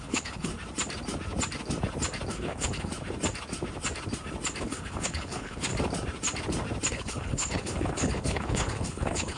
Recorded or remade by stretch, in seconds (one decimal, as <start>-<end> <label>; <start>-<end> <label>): 0.0-0.5 remade; 0.5-2.3 recorded; 2.3-2.9 remade; 2.9-4.6 recorded; 4.6-5.7 remade; 5.7-6.9 recorded; 6.9-9.4 remade